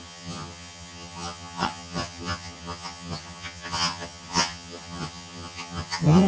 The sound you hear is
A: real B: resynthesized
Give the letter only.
B